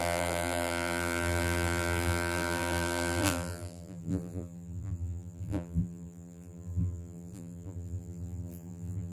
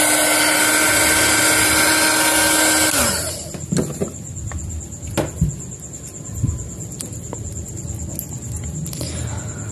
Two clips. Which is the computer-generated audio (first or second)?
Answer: first